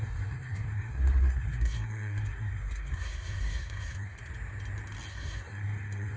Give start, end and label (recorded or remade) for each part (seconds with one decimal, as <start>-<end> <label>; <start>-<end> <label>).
0.0-4.2 remade; 4.2-5.1 recorded; 5.1-6.2 remade